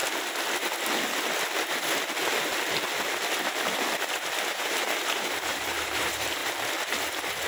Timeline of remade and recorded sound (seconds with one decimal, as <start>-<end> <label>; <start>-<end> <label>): 0.0-4.5 recorded; 4.5-6.4 remade; 6.4-7.5 recorded